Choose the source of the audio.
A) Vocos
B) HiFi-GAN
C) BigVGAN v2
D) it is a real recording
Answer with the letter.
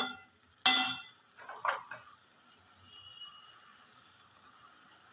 D